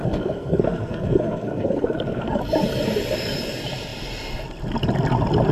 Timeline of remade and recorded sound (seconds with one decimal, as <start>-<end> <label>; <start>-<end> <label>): 0.0-2.4 remade; 2.4-5.5 recorded